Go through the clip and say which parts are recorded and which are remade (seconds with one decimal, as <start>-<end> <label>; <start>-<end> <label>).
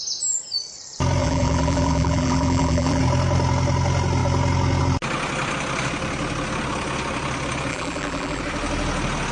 0.0-1.2 recorded; 1.2-3.0 remade; 3.0-7.7 recorded; 7.7-8.4 remade; 8.4-9.3 recorded